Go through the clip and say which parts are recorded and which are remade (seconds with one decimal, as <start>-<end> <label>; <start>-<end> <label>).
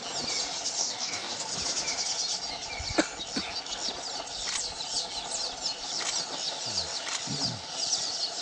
0.0-0.8 recorded; 0.8-1.5 remade; 1.5-8.4 recorded